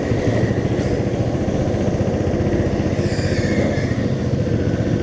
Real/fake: real